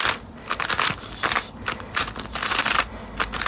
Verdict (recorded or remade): recorded